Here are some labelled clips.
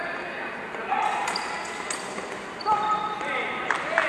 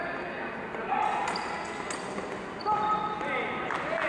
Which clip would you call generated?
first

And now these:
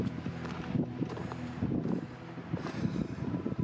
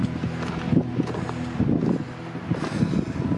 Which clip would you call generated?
first